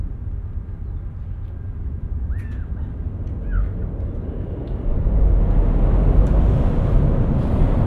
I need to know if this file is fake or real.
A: real